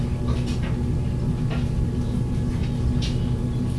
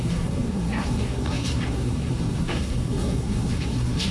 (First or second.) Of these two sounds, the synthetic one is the second